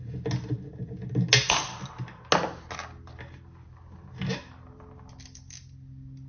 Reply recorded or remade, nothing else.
recorded